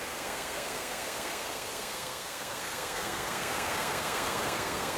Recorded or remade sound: remade